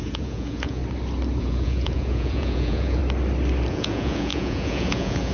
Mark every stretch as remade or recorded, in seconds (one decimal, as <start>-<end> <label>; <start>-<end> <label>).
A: 0.0-0.8 remade; 0.8-1.4 recorded; 1.4-3.0 remade; 3.0-3.7 recorded; 3.7-5.3 remade